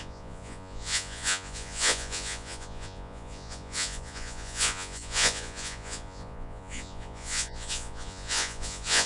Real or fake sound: fake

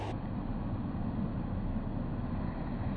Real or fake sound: real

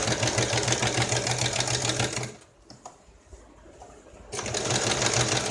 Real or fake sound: real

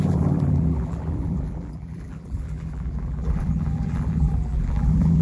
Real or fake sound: fake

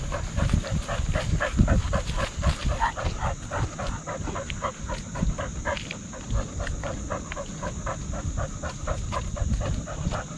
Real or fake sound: real